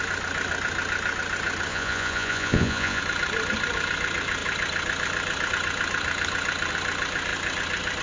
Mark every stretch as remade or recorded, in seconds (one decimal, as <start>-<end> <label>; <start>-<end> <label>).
0.0-1.7 recorded; 1.7-3.0 remade; 3.0-8.0 recorded